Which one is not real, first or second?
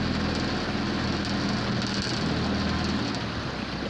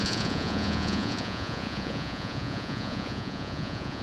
second